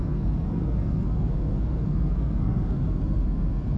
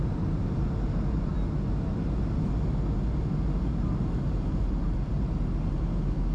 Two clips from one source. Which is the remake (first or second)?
first